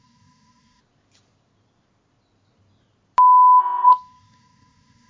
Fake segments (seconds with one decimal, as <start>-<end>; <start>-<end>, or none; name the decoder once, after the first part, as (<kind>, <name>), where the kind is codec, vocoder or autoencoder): 0.0-0.8 (codec, SNAC); 3.6-5.1